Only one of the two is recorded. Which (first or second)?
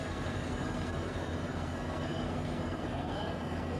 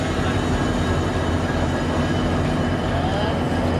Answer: second